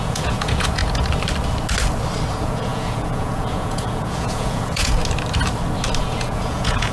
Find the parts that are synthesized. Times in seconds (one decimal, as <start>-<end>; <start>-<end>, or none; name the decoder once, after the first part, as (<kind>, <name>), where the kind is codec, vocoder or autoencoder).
0.0-0.8 (vocoder, Vocos); 2.3-5.0; 6.0-6.9